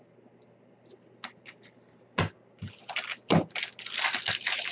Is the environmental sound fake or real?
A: real